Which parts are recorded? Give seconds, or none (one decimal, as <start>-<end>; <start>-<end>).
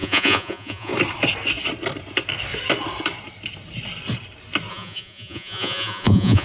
0.9-4.7